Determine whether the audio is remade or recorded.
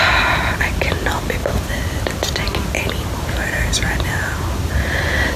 recorded